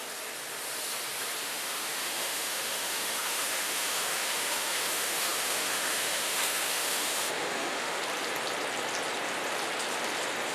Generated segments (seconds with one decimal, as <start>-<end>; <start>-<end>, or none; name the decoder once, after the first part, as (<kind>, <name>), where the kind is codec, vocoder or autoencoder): 1.4-8.0 (autoencoder, DAC-VAE)